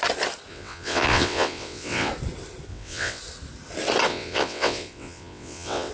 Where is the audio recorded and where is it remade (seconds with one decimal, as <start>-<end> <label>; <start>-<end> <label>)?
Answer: 0.0-0.5 recorded; 0.5-2.1 remade; 2.1-2.7 recorded; 2.7-3.2 remade; 3.2-4.1 recorded; 4.1-5.9 remade